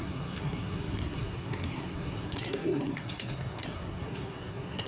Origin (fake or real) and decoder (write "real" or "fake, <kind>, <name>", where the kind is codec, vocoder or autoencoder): fake, codec, SNAC